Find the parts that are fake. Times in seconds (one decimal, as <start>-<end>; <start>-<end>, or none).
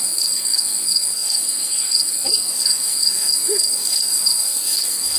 0.0-5.2